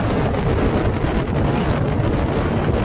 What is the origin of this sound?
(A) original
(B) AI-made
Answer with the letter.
A